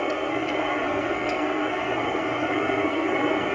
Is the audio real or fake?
fake